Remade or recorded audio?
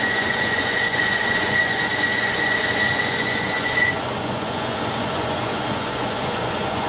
remade